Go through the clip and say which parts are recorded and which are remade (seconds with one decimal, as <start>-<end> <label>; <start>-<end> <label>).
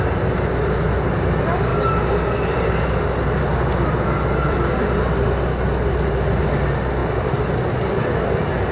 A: 0.0-8.7 recorded